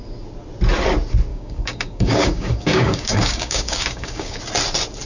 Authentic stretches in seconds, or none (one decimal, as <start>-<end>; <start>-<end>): 0.0-1.3; 4.4-5.1

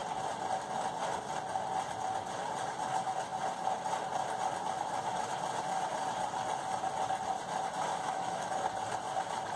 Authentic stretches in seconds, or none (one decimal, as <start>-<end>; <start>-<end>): 0.0-7.9; 8.5-9.6